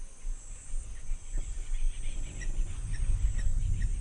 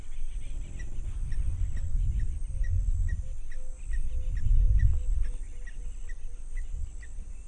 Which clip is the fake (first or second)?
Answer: first